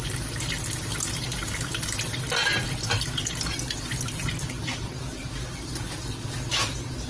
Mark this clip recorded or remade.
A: recorded